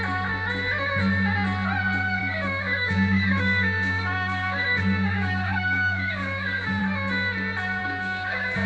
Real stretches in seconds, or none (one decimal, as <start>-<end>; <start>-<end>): 0.0-2.2; 6.8-7.8